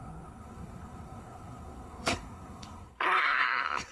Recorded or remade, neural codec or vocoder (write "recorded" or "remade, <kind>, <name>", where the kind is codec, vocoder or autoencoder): remade, codec, SNAC